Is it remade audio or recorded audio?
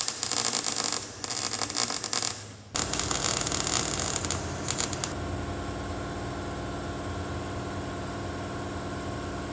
recorded